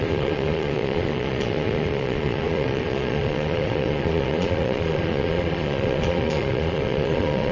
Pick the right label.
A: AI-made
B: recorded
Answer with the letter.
A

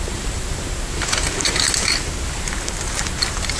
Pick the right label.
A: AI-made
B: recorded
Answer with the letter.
B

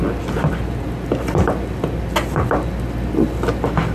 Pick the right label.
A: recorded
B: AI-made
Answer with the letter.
A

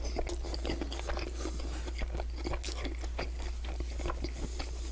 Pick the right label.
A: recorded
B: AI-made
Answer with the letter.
A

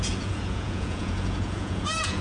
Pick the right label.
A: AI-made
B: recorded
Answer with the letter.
A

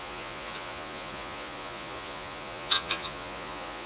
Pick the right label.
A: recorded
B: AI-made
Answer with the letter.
B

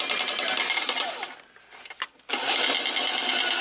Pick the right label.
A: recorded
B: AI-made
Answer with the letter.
A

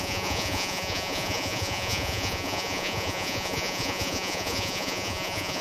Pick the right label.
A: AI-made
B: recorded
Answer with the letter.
A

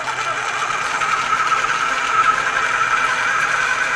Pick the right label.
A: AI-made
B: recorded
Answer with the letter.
B